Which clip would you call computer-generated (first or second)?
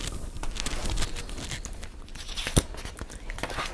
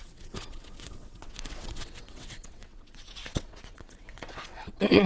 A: second